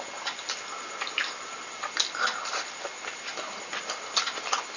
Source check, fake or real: real